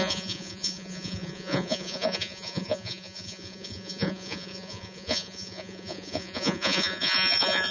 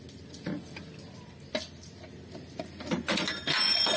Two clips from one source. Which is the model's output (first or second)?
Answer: first